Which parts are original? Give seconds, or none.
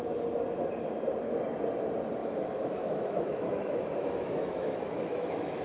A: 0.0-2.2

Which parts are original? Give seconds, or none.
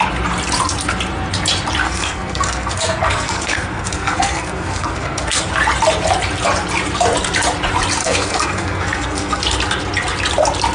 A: 0.0-1.8; 5.4-8.0; 9.4-10.7